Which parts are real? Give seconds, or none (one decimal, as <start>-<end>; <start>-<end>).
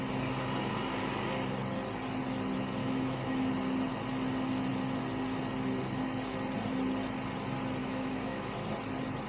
0.0-2.8; 3.5-7.8; 8.5-9.3